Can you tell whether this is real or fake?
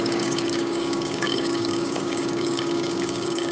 fake